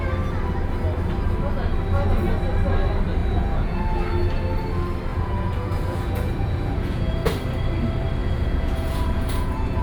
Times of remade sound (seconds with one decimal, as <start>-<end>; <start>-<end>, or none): 3.2-3.8; 5.1-7.3; 8.2-9.8